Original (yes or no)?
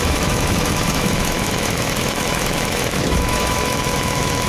no